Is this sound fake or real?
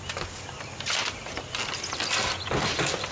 real